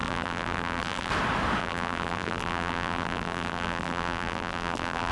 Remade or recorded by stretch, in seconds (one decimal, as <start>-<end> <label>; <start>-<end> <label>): 0.0-1.1 remade; 1.1-1.6 recorded; 1.6-5.1 remade